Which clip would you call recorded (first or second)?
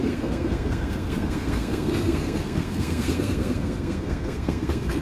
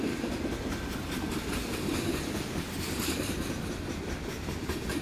second